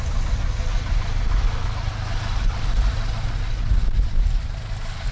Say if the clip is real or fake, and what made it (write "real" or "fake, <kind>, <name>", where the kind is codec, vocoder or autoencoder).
real